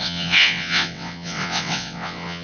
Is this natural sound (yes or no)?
no